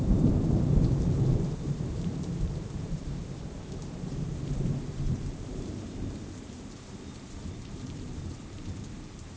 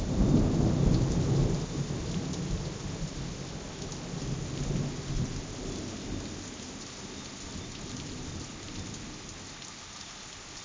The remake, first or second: first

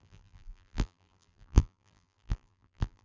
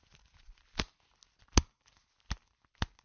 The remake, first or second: first